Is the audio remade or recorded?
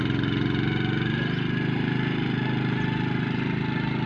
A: recorded